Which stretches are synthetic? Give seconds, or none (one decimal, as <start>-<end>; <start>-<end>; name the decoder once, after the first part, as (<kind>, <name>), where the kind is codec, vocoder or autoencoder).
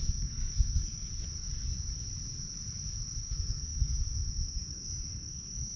0.0-1.1 (codec, SNAC); 3.2-5.8